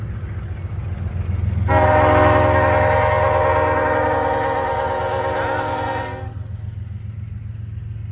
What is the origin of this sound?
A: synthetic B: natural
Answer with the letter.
B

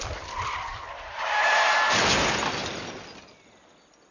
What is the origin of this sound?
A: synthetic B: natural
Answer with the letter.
B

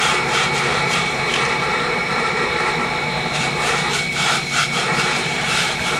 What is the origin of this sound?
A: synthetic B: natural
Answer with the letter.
A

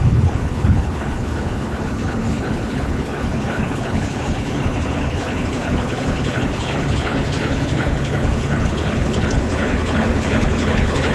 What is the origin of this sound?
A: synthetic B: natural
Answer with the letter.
A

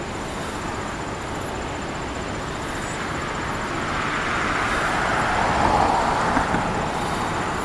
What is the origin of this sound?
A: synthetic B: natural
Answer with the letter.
B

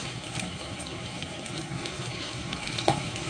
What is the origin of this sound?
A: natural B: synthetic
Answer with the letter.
B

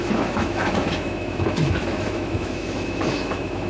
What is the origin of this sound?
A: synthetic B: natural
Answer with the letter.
A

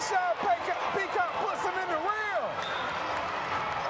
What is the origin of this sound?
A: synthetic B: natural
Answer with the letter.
B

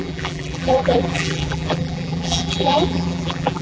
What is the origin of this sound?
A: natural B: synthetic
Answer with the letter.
B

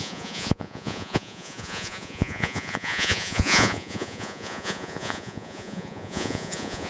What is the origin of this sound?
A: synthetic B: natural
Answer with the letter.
A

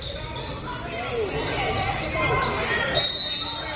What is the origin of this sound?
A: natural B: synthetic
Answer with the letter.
A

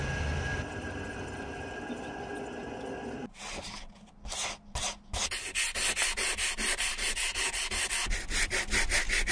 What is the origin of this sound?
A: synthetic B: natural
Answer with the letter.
B